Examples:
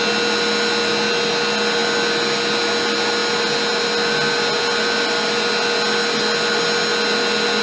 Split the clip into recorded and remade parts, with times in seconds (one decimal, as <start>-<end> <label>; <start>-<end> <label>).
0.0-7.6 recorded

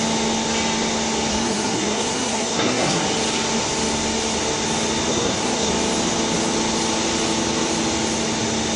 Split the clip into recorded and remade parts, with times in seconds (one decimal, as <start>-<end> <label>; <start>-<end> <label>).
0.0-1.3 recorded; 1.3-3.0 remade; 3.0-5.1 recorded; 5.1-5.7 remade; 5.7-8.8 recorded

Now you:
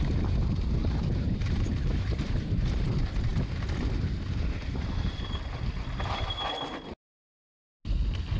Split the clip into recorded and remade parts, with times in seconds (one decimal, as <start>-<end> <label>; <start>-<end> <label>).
0.0-0.8 recorded; 0.8-2.9 remade; 2.9-8.4 recorded

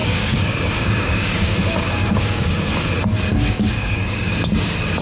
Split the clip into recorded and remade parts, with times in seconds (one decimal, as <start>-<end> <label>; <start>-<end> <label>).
0.0-2.7 remade; 2.7-3.3 recorded; 3.3-4.5 remade; 4.5-5.0 recorded

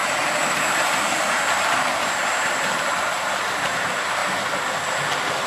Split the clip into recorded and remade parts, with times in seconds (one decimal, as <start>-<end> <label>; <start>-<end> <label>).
0.0-4.2 remade; 4.2-4.9 recorded; 4.9-5.5 remade

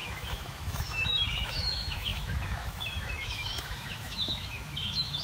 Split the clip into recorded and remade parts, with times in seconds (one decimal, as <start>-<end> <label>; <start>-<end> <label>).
0.0-5.2 remade

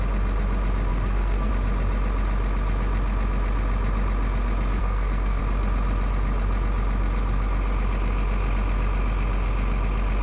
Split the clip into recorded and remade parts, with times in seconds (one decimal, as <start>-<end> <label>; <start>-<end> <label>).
0.0-0.9 recorded; 0.9-1.5 remade; 1.5-4.8 recorded; 4.8-5.4 remade; 5.4-10.2 recorded

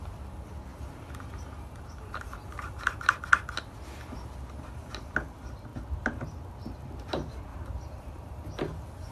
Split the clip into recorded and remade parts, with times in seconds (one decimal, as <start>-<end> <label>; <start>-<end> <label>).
0.0-0.7 recorded; 0.7-3.0 remade; 3.0-7.5 recorded; 7.5-8.4 remade; 8.4-9.1 recorded